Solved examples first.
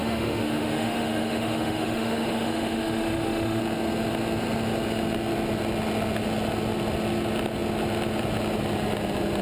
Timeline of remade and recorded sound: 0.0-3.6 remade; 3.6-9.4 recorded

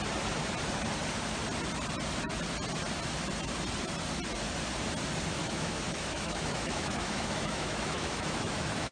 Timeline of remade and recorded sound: 0.0-5.4 recorded; 5.4-8.9 remade

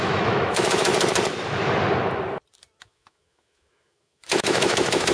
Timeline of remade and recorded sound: 0.0-0.9 remade; 0.9-2.8 recorded; 2.8-5.1 remade

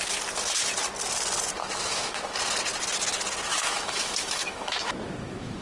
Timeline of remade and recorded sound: 0.0-1.6 recorded; 1.6-2.3 remade; 2.3-3.5 recorded; 3.5-5.6 remade

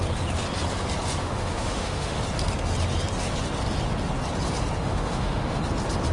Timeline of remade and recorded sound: 0.0-1.2 recorded; 1.2-2.2 remade; 2.2-4.8 recorded; 4.8-5.6 remade; 5.6-6.1 recorded

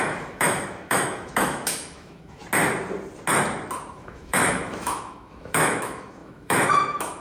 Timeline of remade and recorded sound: 0.0-2.4 remade; 2.4-4.0 recorded; 4.0-7.2 remade

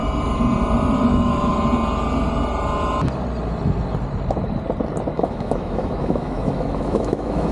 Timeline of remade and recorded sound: 0.0-1.1 recorded; 1.1-1.5 remade; 1.5-5.1 recorded; 5.1-7.5 remade

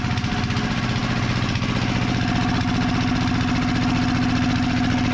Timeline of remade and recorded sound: 0.0-5.1 recorded